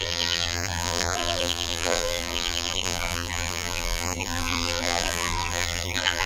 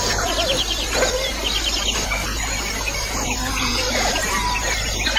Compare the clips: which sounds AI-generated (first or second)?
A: first